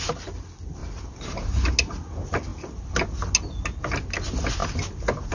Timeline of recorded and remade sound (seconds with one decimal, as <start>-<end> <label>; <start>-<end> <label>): 0.0-5.3 recorded